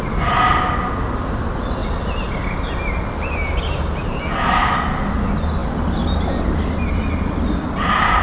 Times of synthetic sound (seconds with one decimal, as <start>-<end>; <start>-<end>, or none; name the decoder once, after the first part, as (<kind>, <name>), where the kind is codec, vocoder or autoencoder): none